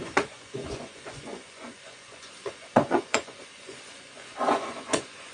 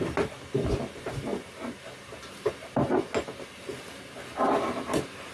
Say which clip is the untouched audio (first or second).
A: second